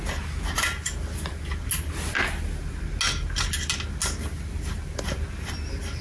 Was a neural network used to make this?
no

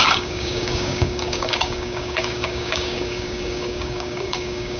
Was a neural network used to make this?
yes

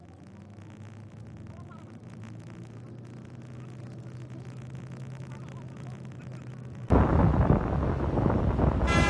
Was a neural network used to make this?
no